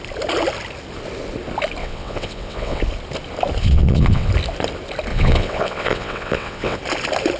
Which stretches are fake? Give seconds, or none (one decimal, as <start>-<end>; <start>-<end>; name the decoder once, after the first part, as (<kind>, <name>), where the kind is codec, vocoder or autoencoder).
1.8-2.8 (vocoder, WaveNeXt); 3.6-4.3; 5.1-6.8